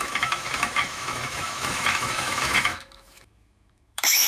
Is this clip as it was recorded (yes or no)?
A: no